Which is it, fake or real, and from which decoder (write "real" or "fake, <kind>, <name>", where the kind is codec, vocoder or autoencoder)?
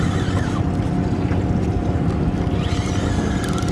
real